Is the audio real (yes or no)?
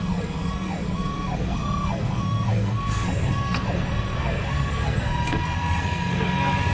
no